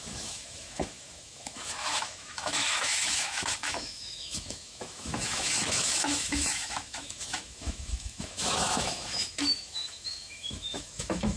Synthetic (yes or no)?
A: yes